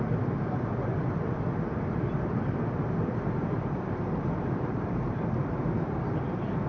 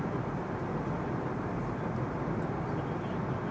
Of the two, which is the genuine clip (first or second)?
second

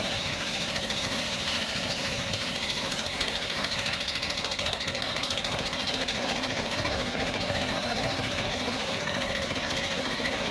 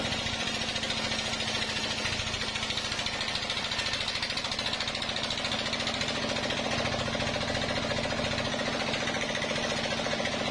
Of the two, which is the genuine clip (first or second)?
second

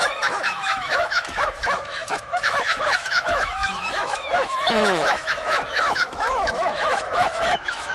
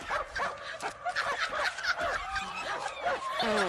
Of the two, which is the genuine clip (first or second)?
second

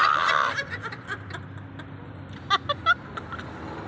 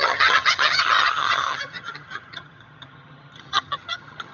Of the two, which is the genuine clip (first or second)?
first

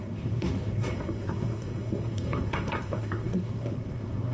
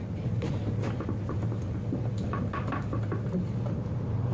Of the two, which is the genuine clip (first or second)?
second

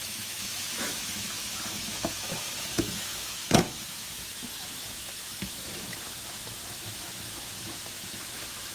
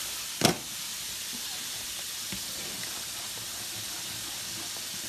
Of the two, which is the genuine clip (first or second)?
second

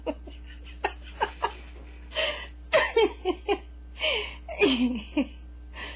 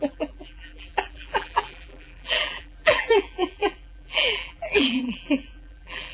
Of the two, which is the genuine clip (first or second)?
first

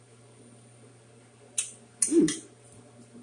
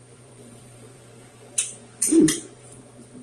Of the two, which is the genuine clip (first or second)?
first